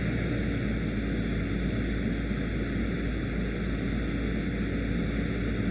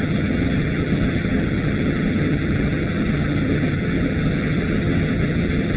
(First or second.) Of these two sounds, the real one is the first